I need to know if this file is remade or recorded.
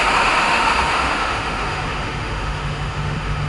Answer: remade